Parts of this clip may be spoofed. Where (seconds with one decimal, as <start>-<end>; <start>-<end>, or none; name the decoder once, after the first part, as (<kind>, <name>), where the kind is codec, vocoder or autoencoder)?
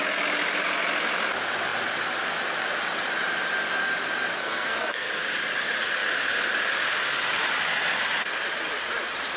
4.3-5.1 (codec, SNAC)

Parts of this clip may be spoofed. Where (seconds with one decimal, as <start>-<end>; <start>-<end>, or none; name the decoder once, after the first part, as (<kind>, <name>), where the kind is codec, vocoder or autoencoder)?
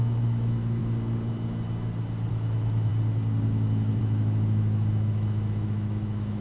0.0-0.8 (autoencoder, DAC-VAE); 2.3-2.9; 4.0-6.4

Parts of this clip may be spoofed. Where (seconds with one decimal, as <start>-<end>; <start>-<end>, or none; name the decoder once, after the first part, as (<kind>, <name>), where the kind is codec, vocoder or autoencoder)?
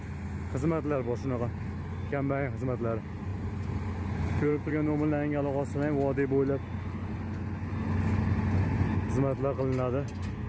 3.3-4.7 (vocoder, BigVGAN v2)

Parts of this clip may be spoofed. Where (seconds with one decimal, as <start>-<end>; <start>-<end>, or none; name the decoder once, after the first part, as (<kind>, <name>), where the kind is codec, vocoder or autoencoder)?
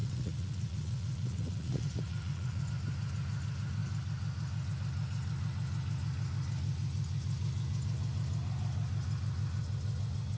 0.0-2.7 (vocoder, Vocos)